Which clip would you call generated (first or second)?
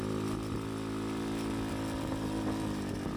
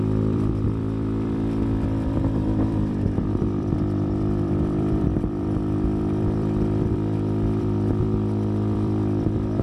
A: second